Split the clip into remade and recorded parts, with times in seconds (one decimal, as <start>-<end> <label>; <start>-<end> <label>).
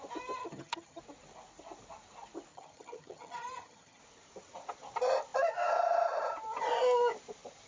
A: 0.0-0.4 recorded; 0.4-1.0 remade; 1.0-2.5 recorded; 2.5-4.0 remade; 4.0-7.7 recorded